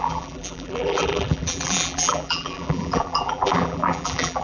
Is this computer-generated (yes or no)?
yes